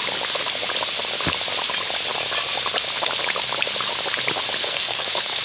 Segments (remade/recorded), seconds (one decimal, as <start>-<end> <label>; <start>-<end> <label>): 0.0-4.6 recorded; 4.6-5.4 remade